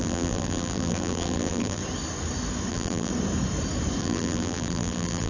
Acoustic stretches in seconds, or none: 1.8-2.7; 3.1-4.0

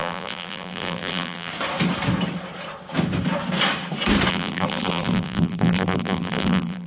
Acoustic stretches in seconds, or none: 1.5-4.3

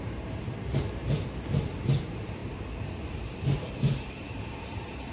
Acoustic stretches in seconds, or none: 1.0-2.0; 2.4-3.1

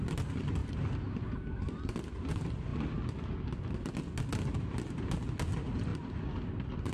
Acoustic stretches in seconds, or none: 0.0-6.9

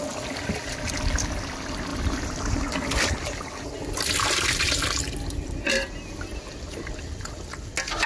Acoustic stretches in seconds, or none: 0.0-1.9; 2.6-8.1

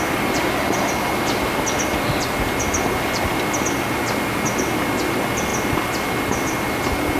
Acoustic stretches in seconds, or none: 0.0-7.2

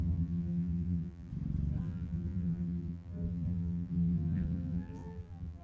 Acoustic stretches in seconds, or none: 1.3-1.8